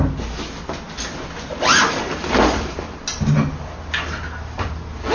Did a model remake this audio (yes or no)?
no